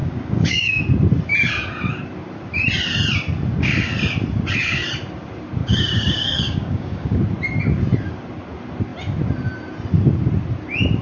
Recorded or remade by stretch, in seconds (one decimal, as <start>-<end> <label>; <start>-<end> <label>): 0.0-0.8 remade; 0.8-5.6 recorded; 5.6-7.2 remade; 7.2-11.0 recorded